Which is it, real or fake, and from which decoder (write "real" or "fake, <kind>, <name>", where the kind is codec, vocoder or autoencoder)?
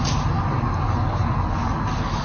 real